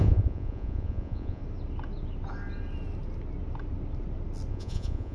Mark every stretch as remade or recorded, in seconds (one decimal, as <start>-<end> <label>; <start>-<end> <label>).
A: 0.0-1.4 remade; 1.4-4.5 recorded; 4.5-5.1 remade